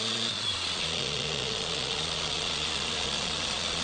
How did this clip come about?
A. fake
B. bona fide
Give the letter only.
A